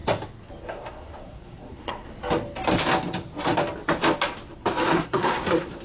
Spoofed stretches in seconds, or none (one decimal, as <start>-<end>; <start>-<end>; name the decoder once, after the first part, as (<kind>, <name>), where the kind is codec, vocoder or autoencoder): 0.6-2.1 (codec, SNAC); 4.9-5.8

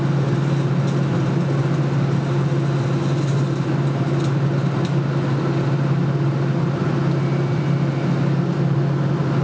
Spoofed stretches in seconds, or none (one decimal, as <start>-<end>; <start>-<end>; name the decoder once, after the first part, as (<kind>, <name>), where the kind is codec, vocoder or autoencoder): none